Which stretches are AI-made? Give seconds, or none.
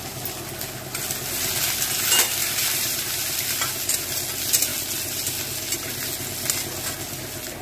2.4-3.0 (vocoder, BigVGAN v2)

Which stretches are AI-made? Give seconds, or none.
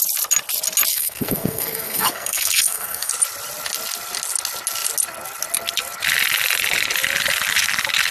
0.9-3.1 (codec, SNAC)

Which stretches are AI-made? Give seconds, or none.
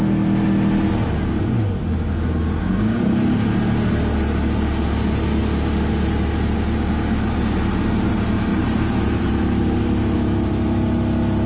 8.5-9.3 (vocoder, BigVGAN v2)